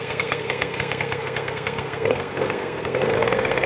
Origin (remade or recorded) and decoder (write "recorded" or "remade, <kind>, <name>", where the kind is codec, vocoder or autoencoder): remade, codec, SNAC